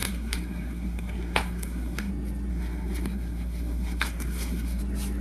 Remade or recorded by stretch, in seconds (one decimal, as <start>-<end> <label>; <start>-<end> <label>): 0.0-2.1 remade; 2.1-2.5 recorded; 2.5-4.8 remade; 4.8-5.2 recorded